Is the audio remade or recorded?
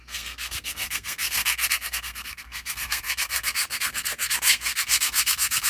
remade